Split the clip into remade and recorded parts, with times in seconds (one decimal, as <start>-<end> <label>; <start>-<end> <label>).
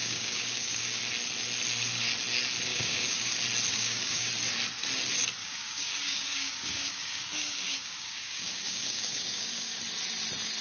0.0-1.0 remade; 1.0-2.7 recorded; 2.7-3.3 remade; 3.3-3.7 recorded; 3.7-4.3 remade; 4.3-5.4 recorded; 5.4-9.8 remade; 9.8-10.6 recorded